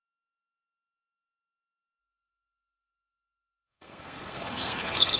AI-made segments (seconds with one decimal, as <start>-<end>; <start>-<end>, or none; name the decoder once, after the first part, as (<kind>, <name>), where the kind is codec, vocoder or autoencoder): 2.0-5.2 (codec, SNAC)